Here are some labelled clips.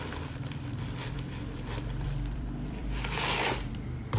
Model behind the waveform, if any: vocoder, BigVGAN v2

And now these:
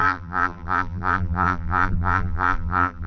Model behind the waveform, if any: vocoder, BigVGAN v2